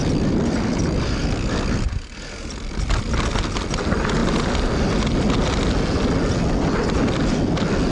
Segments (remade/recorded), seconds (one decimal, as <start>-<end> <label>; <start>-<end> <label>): 0.0-7.9 recorded